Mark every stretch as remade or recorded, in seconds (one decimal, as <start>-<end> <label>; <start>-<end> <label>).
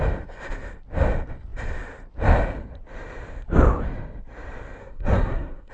0.0-4.8 recorded; 4.8-5.7 remade